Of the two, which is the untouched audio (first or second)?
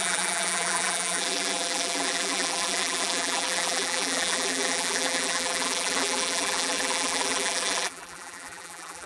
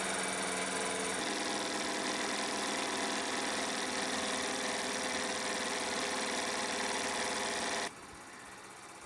second